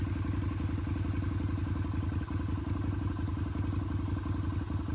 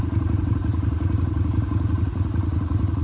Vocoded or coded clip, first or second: second